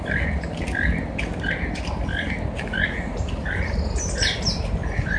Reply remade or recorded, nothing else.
recorded